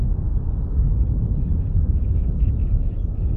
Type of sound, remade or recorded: recorded